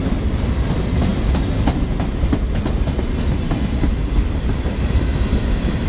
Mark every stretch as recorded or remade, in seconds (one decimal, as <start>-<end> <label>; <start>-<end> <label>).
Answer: 0.0-1.1 remade; 1.1-3.0 recorded; 3.0-5.9 remade